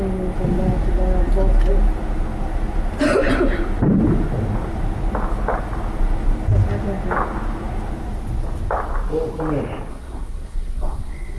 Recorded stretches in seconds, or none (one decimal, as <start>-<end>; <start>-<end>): 0.0-9.9

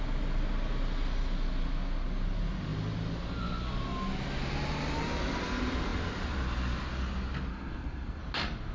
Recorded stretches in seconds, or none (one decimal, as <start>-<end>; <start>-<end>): 0.0-7.5; 8.2-8.7